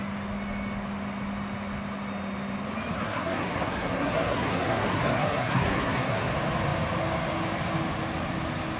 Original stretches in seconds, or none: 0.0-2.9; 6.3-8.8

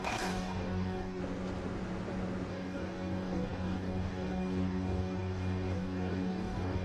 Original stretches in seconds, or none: 1.2-2.5

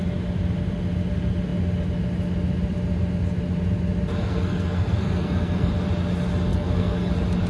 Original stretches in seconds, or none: 0.0-4.2; 5.7-6.5; 7.1-7.5

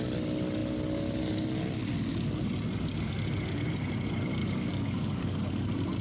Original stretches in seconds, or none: 0.0-4.4; 5.5-6.0

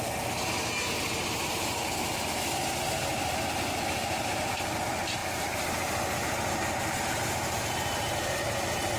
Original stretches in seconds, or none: 0.0-9.0

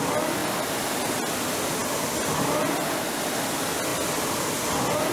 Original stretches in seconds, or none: 0.0-5.1

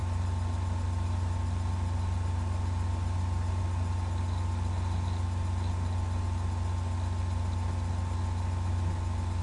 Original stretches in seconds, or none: 0.0-9.4